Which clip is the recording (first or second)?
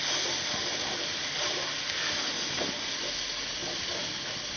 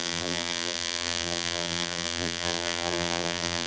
first